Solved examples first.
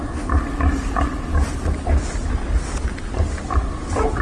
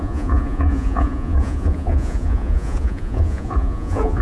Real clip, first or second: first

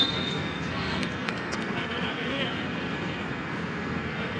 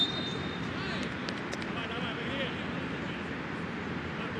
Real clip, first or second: second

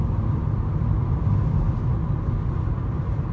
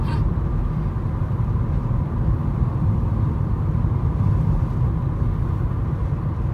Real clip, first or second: first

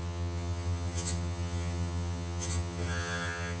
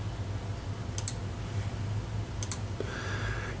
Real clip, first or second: second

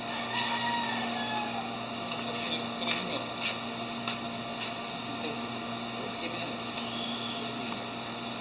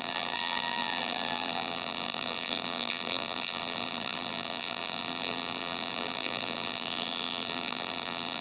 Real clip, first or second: first